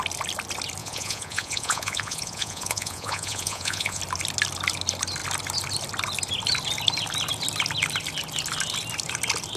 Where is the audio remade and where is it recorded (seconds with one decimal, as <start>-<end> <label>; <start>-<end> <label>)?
0.0-0.8 recorded; 0.8-4.0 remade; 4.0-9.6 recorded